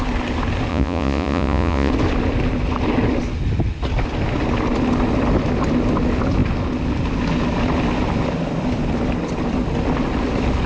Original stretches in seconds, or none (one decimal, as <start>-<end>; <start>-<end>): 0.0-0.7; 1.9-10.7